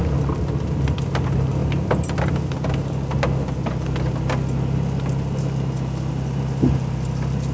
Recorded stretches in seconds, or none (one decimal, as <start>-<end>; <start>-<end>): 0.0-7.5